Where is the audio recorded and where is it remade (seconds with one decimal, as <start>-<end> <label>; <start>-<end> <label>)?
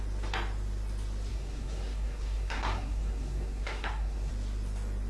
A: 0.0-1.3 recorded; 1.3-4.3 remade; 4.3-5.1 recorded